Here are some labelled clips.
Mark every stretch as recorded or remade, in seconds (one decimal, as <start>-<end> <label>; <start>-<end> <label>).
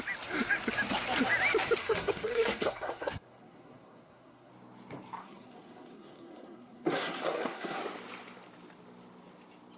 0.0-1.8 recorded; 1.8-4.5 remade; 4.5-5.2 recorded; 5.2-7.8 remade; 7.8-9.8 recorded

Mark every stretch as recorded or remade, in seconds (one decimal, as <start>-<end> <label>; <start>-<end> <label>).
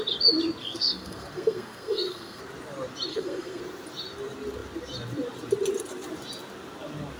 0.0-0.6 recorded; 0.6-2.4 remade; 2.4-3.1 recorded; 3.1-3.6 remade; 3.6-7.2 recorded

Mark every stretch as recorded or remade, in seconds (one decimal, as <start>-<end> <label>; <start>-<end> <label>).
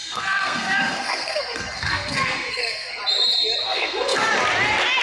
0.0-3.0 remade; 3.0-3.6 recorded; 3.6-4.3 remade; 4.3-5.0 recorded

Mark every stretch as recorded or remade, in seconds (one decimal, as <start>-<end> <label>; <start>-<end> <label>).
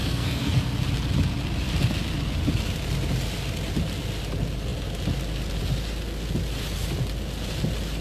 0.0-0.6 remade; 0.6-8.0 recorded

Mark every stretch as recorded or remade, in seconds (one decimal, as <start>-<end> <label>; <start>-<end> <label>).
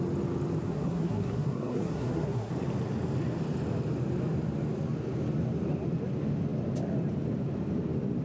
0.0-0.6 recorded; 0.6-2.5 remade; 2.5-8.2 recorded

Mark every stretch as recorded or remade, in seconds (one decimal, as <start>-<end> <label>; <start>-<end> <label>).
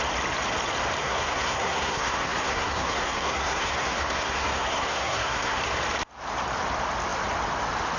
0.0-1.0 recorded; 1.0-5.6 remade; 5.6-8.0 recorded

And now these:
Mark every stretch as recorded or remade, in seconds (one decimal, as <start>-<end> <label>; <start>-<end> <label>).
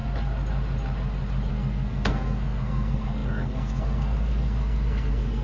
0.0-1.5 recorded; 1.5-5.4 remade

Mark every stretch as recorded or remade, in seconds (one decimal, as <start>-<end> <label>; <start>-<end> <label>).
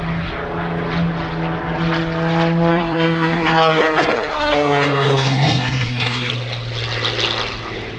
0.0-2.7 recorded; 2.7-6.3 remade; 6.3-8.0 recorded